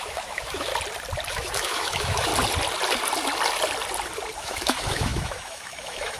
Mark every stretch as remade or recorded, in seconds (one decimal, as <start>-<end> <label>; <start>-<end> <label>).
0.0-0.7 remade; 0.7-1.3 recorded; 1.3-2.3 remade; 2.3-4.4 recorded; 4.4-6.2 remade